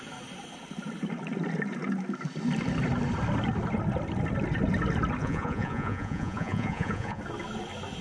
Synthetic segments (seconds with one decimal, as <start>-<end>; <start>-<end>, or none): 5.2-7.2